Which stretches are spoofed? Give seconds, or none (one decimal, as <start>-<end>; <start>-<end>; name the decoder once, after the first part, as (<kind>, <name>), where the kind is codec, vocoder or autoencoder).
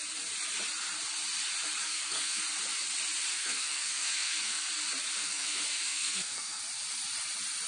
1.8-2.4 (codec, SNAC); 3.3-4.7; 5.2-6.6